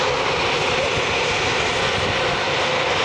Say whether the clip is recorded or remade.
recorded